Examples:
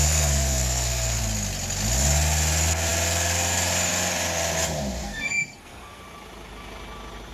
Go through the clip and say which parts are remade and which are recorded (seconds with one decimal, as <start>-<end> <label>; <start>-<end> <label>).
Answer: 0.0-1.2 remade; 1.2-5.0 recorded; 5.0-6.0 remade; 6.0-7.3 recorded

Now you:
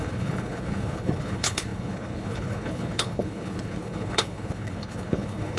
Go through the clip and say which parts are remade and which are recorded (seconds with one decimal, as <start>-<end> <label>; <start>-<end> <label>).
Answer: 0.0-5.6 remade

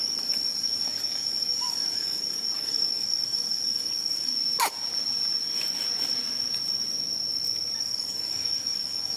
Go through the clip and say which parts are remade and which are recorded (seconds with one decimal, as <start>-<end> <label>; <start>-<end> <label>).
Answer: 0.0-4.3 remade; 4.3-7.8 recorded; 7.8-9.2 remade